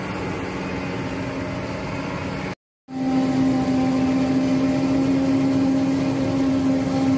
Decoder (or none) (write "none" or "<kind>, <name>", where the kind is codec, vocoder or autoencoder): none